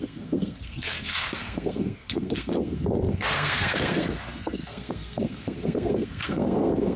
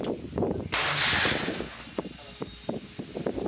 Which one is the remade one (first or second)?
first